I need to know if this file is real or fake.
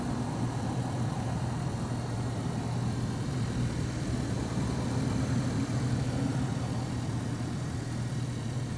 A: fake